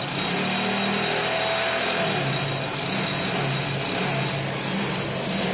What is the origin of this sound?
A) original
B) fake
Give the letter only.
A